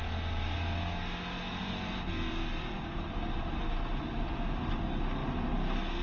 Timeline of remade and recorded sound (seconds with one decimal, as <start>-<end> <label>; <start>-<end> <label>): 0.0-1.6 recorded; 1.6-3.1 remade; 3.1-6.0 recorded